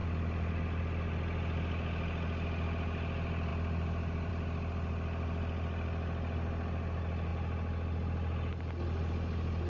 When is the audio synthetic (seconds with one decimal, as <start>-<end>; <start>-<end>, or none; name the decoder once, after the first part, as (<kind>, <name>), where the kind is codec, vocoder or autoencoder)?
none